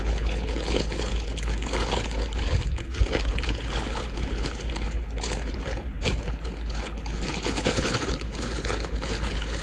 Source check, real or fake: fake